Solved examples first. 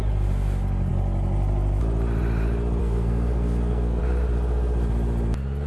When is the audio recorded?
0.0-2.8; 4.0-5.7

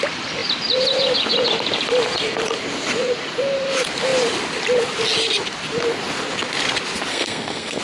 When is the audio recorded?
0.0-7.1

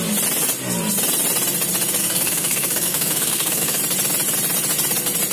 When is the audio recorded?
0.0-2.0; 3.8-5.3